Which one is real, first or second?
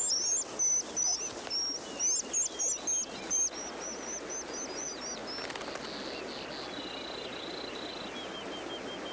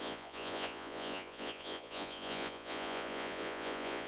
first